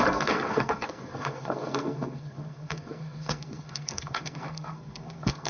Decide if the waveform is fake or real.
fake